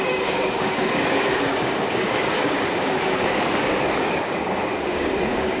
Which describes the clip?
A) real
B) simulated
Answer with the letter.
B